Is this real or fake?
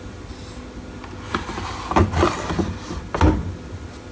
real